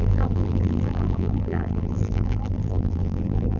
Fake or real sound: fake